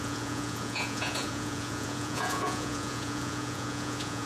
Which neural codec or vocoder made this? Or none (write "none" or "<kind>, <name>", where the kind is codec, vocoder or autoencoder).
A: vocoder, Vocos